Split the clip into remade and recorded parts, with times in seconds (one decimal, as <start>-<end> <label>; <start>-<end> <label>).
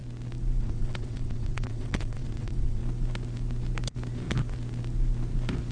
0.0-0.6 recorded; 0.6-2.8 remade; 2.8-5.7 recorded